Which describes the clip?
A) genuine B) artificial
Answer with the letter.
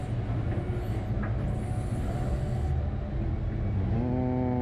A